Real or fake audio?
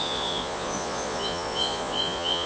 fake